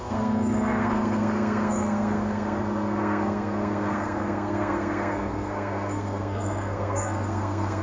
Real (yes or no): no